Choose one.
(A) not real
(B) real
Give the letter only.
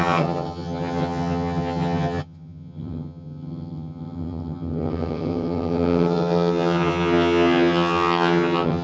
A